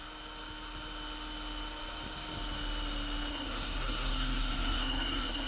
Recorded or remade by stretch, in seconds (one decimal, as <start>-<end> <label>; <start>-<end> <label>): 0.0-3.3 recorded; 3.3-5.5 remade